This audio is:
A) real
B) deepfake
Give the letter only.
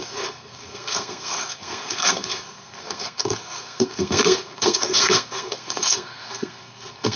B